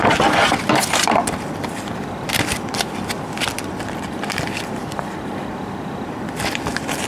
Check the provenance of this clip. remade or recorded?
remade